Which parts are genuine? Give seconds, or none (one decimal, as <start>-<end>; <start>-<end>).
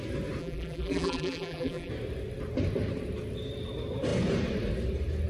0.0-0.4; 1.9-5.3